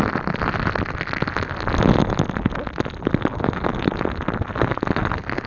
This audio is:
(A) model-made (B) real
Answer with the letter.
B